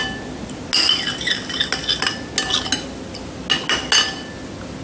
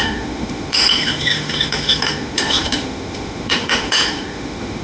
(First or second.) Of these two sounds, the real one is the first